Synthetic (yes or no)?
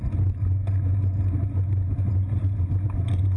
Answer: no